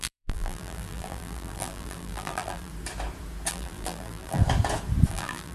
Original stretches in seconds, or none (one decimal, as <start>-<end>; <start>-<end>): 2.7-3.5; 4.4-5.1